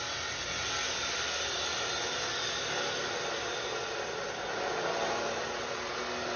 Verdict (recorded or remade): recorded